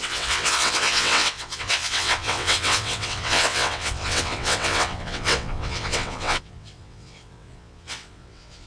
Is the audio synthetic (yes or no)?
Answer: yes